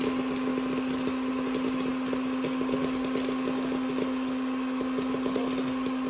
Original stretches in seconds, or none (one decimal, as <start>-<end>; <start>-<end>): 0.0-6.1